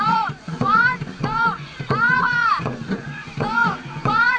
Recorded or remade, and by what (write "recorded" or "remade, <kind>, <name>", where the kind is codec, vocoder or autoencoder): remade, vocoder, Vocos